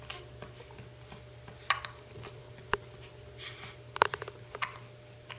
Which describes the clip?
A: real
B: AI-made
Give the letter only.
A